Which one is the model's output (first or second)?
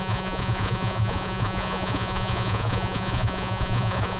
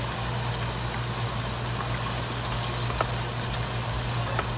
first